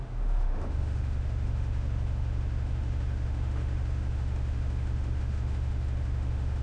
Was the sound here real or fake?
fake